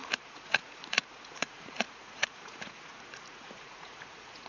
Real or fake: fake